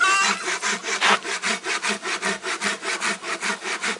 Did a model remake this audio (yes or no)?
no